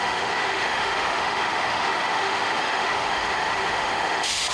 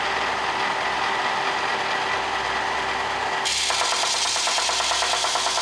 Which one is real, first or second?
second